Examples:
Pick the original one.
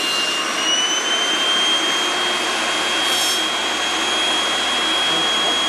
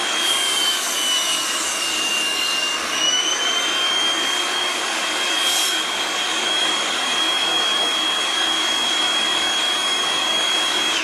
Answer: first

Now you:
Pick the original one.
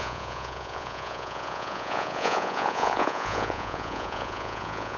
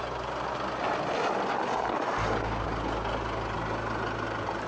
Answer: second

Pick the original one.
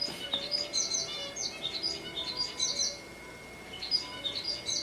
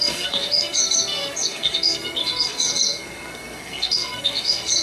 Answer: first